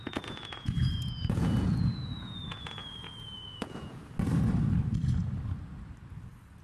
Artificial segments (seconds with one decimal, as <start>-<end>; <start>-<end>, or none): 0.0-4.0